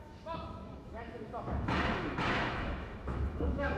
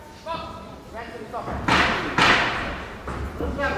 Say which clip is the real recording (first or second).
second